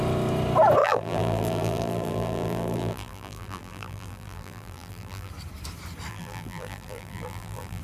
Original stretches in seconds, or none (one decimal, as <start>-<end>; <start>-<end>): 0.0-0.8; 5.3-6.1